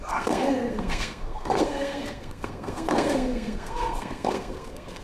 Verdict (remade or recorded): remade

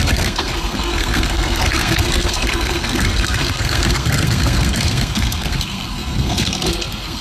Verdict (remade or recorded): remade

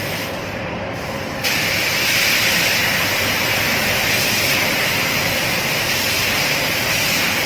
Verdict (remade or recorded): remade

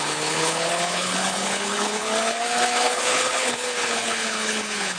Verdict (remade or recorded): remade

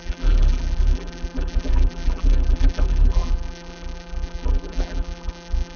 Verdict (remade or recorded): remade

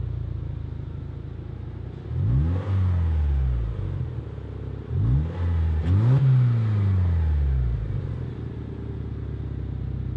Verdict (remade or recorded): recorded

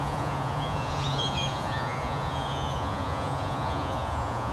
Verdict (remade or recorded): remade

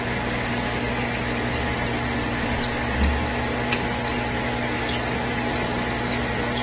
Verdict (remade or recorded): recorded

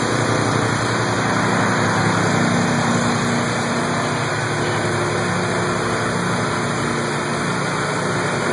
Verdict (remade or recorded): recorded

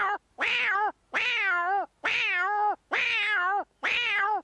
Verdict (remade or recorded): recorded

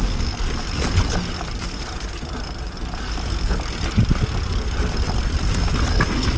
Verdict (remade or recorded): recorded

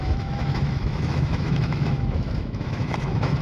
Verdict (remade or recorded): remade